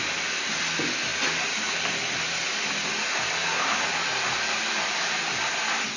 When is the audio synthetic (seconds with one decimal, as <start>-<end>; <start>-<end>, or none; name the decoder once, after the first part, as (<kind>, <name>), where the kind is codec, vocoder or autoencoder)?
none